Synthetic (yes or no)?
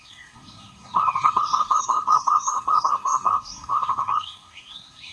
yes